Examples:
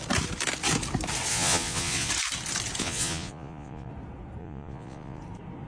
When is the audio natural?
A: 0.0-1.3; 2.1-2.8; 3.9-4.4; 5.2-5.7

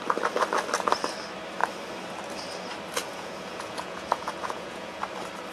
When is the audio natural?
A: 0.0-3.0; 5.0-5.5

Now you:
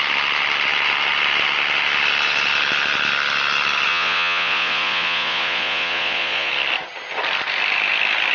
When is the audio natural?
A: 0.0-3.9; 6.5-8.3